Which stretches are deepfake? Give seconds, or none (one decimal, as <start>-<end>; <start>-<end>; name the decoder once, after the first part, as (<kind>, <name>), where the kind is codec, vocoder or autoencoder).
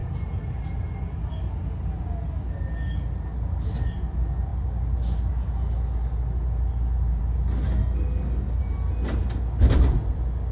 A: 7.8-8.6 (codec, SNAC)